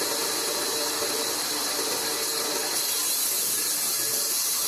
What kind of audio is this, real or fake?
real